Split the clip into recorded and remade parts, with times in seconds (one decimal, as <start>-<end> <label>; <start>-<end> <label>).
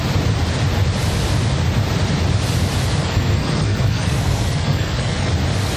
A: 0.0-3.0 recorded; 3.0-5.3 remade; 5.3-5.8 recorded